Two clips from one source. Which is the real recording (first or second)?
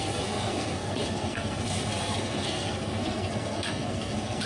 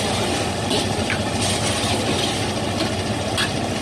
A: second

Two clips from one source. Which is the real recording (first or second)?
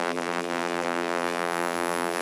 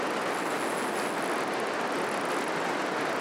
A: second